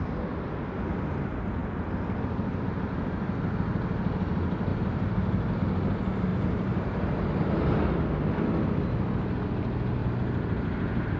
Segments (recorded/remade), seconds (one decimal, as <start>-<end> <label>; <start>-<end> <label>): 0.0-4.7 recorded; 4.7-5.5 remade; 5.5-6.3 recorded; 6.3-6.9 remade; 6.9-10.0 recorded; 10.0-11.2 remade